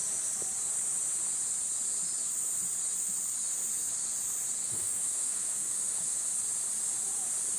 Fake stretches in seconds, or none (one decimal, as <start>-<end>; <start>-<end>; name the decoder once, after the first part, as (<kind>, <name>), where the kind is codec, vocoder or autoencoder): 4.6-6.3 (autoencoder, DAC-VAE)